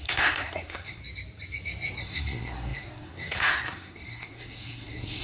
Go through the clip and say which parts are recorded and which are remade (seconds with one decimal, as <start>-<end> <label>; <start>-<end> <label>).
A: 0.0-1.0 remade; 1.0-2.0 recorded; 2.0-5.2 remade